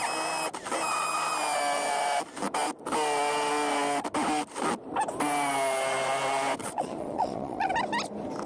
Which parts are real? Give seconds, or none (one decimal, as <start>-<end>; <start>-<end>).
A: 0.0-6.6; 7.7-8.5